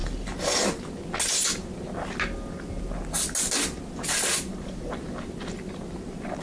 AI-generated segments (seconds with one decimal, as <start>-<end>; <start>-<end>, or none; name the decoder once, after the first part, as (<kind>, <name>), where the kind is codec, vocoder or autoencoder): none